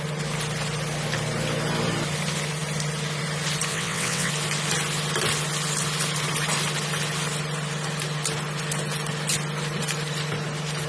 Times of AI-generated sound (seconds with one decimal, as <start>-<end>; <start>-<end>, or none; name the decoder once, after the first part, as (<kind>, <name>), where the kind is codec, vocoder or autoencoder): 3.7-4.3 (vocoder, WaveNeXt)